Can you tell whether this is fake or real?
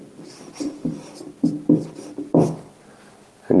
real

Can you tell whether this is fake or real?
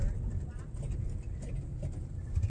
real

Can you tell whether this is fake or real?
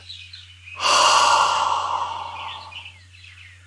real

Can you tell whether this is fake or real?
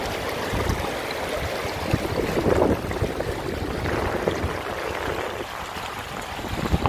real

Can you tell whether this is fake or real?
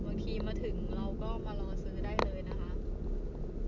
real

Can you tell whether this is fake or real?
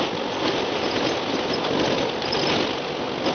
real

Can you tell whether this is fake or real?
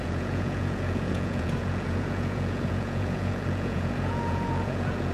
fake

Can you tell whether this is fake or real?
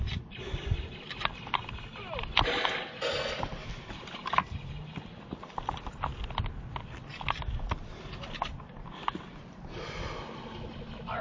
real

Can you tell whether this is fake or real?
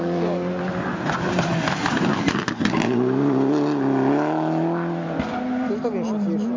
real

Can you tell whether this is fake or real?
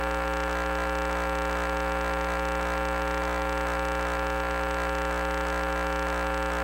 real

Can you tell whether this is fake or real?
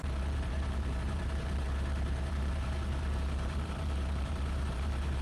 fake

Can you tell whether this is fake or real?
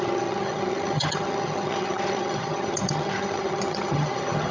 fake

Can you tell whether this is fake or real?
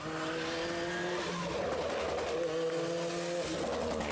real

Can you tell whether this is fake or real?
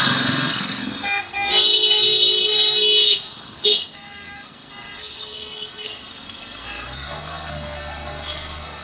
fake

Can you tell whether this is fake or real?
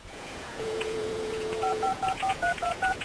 fake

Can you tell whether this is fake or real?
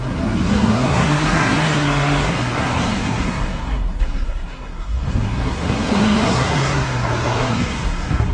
fake